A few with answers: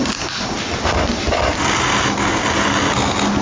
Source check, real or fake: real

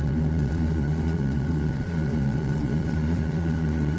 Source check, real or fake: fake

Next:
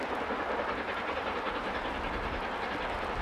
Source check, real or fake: real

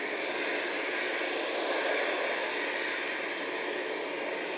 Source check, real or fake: real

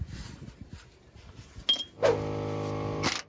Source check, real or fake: real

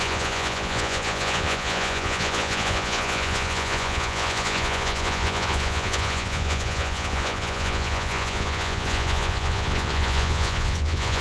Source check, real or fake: fake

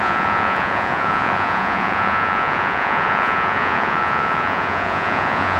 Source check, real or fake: fake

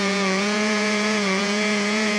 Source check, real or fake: fake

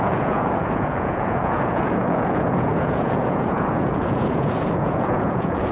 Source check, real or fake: fake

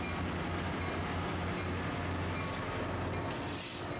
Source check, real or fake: real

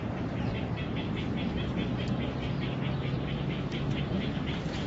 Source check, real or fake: real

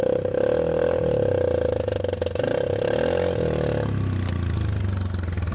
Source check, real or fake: real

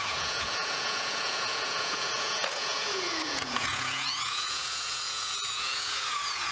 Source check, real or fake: fake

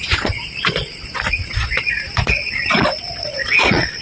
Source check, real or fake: fake